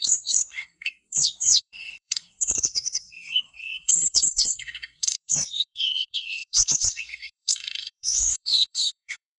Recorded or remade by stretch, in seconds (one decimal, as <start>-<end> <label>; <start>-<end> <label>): 0.0-9.4 remade